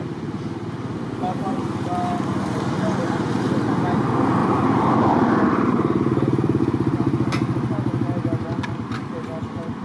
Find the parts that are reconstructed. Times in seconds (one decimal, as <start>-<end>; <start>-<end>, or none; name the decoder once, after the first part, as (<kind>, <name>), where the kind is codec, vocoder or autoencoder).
1.5-2.5 (vocoder, BigVGAN v2); 4.4-6.6

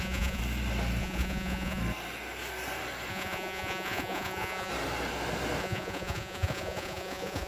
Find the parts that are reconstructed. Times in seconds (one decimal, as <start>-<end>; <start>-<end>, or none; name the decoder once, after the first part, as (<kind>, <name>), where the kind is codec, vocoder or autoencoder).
0.0-0.4 (vocoder, Vocos); 1.0-1.8; 3.1-4.7; 5.6-7.5

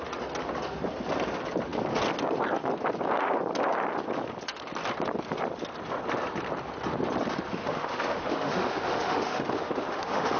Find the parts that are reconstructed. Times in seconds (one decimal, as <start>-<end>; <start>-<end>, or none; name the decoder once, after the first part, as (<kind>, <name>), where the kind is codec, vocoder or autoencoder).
7.5-10.4 (autoencoder, DAC-VAE)